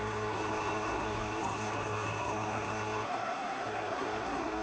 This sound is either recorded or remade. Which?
remade